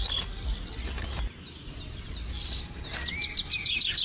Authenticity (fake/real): real